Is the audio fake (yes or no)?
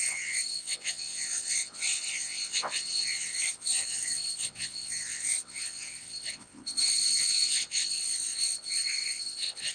yes